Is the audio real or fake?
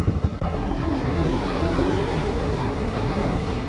fake